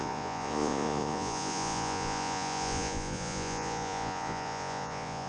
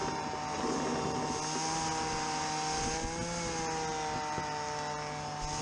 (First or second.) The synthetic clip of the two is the first